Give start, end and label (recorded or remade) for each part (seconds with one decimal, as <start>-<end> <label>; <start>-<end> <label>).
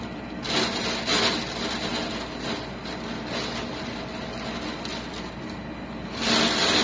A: 0.0-6.8 recorded